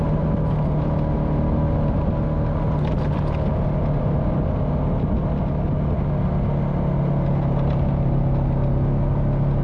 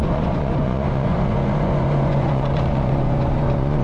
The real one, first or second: first